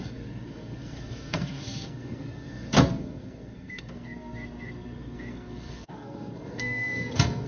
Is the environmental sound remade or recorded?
remade